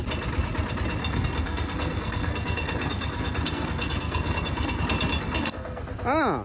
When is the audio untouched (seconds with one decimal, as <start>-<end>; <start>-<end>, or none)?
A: 0.0-1.0; 4.8-5.2; 5.8-6.4